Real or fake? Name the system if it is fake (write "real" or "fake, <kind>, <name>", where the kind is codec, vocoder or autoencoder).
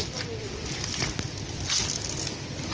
real